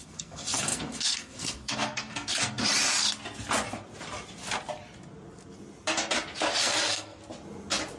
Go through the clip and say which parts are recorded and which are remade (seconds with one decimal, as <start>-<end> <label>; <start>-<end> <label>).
0.0-2.6 remade; 2.6-6.6 recorded; 6.6-7.2 remade; 7.2-8.0 recorded